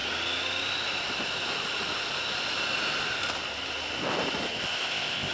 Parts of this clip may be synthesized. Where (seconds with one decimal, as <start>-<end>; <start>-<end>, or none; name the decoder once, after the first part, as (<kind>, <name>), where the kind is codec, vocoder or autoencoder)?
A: 4.5-5.3 (codec, ZipCodec)